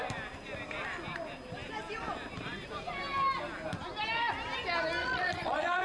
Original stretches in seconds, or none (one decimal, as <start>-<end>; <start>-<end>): 0.0-5.0